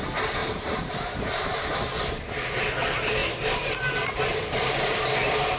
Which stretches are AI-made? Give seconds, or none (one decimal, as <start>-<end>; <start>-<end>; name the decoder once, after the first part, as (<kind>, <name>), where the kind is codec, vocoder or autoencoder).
0.4-1.7 (vocoder, BigVGAN v2); 3.2-5.1